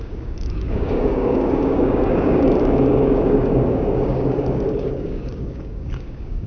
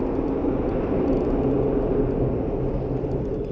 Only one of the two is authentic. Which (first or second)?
second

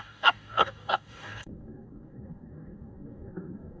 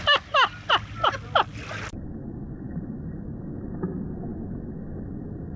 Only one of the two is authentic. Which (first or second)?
second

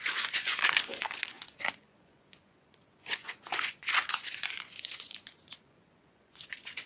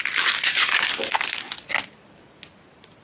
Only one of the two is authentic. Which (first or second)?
second